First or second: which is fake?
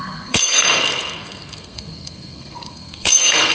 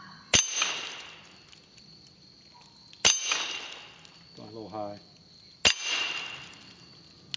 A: first